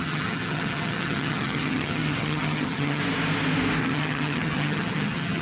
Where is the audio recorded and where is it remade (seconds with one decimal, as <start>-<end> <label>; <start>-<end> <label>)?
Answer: 0.0-3.0 remade; 3.0-3.8 recorded; 3.8-5.4 remade